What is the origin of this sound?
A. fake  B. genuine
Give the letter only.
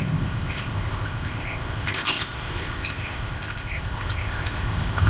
A